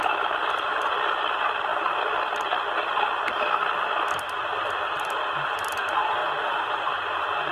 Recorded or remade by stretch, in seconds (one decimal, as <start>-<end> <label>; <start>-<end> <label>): 0.0-7.5 recorded